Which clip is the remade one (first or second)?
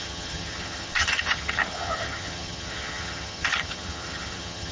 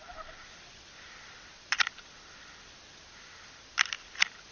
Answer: first